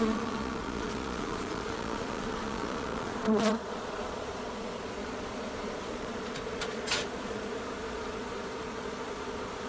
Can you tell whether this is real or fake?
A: fake